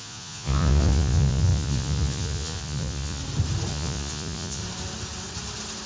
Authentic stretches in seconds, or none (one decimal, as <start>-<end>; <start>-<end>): 3.2-3.7; 4.6-5.9